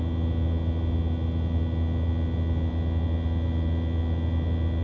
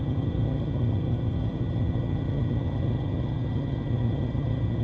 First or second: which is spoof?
second